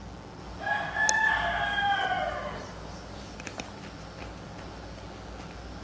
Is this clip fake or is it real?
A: real